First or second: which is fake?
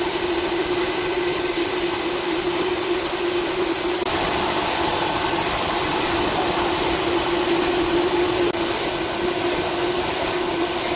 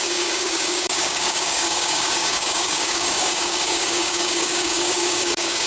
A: second